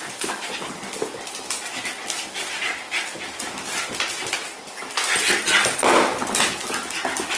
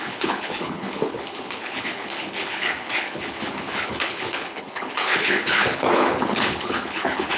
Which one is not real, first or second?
second